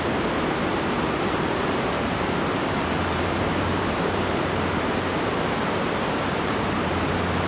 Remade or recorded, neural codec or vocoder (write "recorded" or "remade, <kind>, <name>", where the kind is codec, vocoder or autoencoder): remade, vocoder, BigVGAN v2